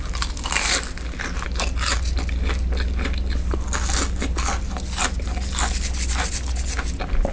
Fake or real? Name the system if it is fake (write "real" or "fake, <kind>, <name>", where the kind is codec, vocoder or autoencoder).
real